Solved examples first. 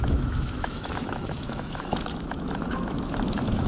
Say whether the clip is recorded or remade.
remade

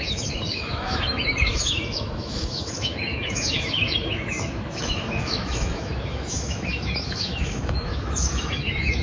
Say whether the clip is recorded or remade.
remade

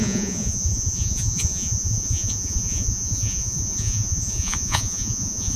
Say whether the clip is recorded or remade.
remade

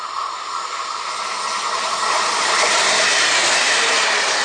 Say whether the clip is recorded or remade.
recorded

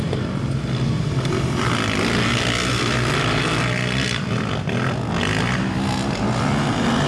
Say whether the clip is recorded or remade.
recorded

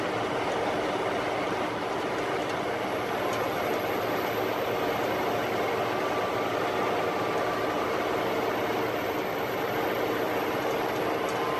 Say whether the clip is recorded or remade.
recorded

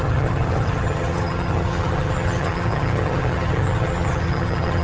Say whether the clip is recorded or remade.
remade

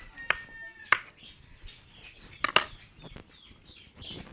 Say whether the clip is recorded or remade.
recorded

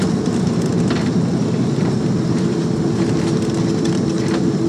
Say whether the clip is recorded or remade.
recorded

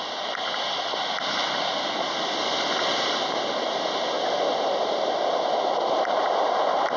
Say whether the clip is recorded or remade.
recorded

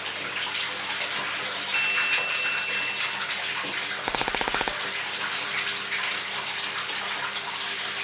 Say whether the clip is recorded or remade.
recorded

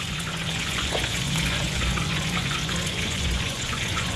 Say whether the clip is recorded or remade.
remade